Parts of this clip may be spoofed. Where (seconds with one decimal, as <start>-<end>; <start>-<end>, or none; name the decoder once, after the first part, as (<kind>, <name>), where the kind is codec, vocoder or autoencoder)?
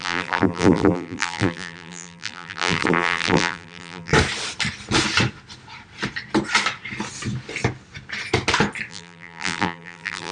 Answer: 0.0-4.1 (vocoder, BigVGAN v2); 8.9-10.3